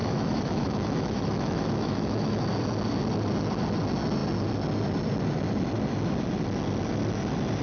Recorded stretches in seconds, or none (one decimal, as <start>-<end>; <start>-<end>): 2.4-7.6